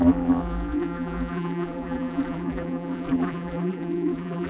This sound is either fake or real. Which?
fake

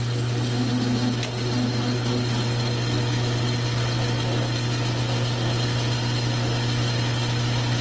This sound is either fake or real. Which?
real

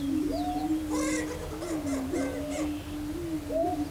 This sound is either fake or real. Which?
real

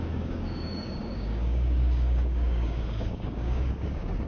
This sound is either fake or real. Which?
fake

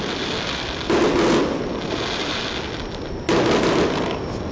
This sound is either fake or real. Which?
real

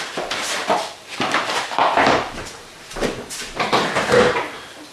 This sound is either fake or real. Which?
fake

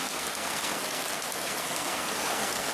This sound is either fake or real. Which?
fake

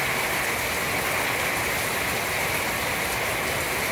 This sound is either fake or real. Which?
real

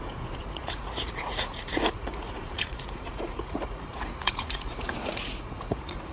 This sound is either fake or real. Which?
fake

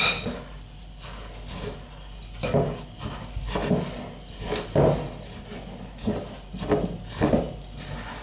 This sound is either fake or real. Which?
real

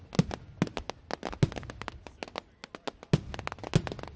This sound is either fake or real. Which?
real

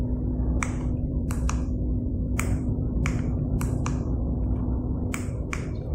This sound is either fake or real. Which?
fake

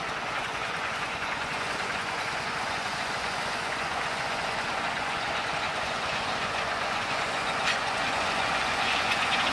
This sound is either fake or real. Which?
fake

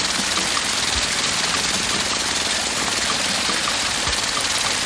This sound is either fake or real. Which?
real